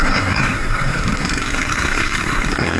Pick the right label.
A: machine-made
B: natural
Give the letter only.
A